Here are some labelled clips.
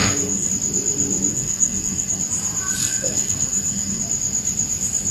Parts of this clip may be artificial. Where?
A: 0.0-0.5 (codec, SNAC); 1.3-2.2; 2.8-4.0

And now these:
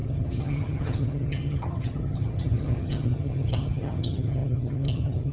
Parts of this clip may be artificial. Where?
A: 0.0-5.3 (vocoder, HiFi-GAN)

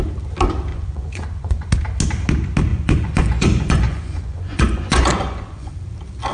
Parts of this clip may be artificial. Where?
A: 0.7-1.7 (vocoder, Vocos); 2.7-5.7

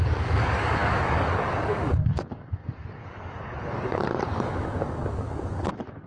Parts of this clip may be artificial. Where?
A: 0.0-6.1 (codec, DAC)

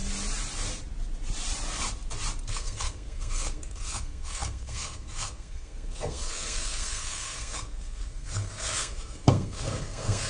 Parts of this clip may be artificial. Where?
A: 2.5-10.3 (codec, SNAC)

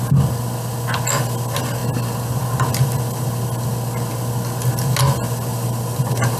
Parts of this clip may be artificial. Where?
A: 5.5-6.4 (vocoder, BigVGAN v2)

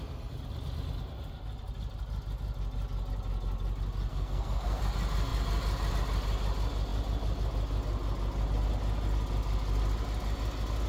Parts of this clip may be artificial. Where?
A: 4.1-4.8 (codec, SNAC)

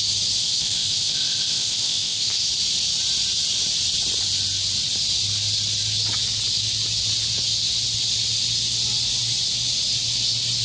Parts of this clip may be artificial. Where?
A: 0.4-2.5 (codec, ZipCodec)